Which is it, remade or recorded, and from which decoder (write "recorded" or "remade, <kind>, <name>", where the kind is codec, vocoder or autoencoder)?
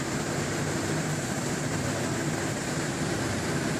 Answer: remade, vocoder, BigVGAN v2